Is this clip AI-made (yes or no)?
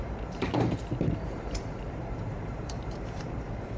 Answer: yes